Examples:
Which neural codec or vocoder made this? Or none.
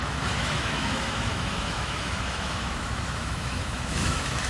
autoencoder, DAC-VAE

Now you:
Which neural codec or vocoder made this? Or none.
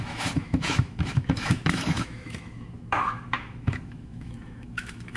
autoencoder, DAC-VAE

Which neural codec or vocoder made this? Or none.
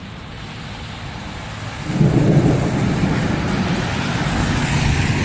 none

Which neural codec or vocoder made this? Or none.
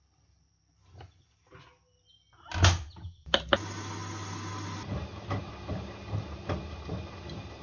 none